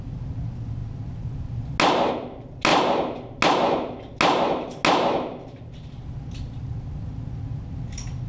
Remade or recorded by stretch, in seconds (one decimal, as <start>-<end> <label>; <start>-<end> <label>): 0.0-8.3 recorded